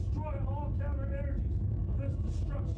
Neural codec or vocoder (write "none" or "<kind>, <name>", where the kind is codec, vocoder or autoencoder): none